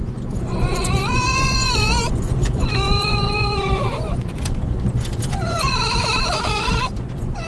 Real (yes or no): no